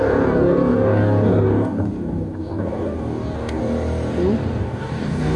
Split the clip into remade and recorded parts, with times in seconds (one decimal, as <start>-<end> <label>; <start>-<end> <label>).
0.0-3.6 remade; 3.6-4.6 recorded; 4.6-5.4 remade